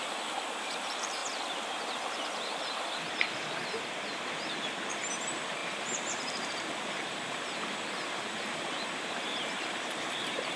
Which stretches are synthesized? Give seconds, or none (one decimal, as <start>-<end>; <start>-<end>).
0.0-1.2; 4.9-10.6